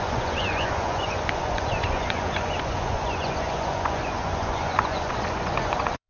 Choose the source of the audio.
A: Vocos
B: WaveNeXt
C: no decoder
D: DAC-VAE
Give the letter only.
A